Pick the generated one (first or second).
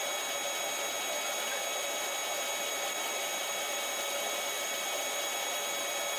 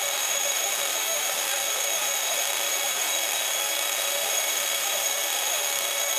second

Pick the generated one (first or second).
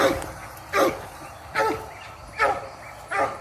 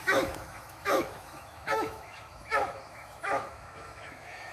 second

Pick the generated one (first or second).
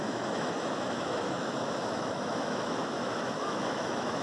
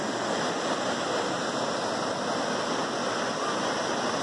first